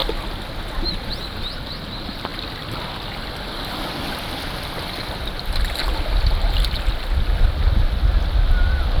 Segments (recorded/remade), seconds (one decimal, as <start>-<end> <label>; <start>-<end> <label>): 0.0-2.3 recorded; 2.3-5.8 remade; 5.8-9.0 recorded